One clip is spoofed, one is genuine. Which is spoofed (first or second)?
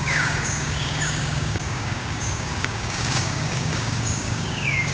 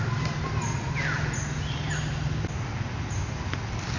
first